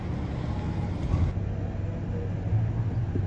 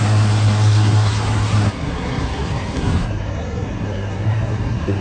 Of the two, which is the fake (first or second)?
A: second